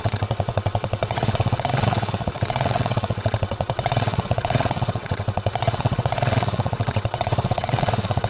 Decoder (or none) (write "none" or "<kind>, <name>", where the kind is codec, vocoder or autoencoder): vocoder, WaveNeXt